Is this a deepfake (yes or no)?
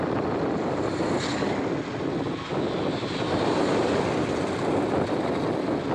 no